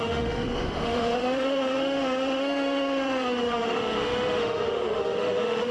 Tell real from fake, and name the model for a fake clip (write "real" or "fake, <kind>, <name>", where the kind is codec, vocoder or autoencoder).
fake, autoencoder, DAC-VAE